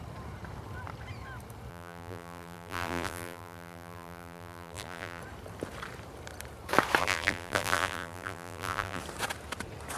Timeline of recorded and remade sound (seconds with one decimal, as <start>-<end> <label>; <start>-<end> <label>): 0.0-1.7 recorded; 1.7-5.2 remade; 5.2-7.0 recorded; 7.0-9.0 remade; 9.0-10.0 recorded